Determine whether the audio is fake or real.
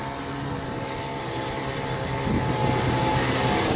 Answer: real